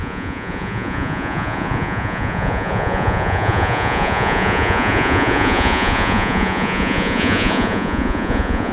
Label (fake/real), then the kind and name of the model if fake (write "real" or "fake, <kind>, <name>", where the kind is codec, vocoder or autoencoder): fake, vocoder, Vocos